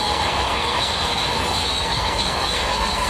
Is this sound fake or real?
fake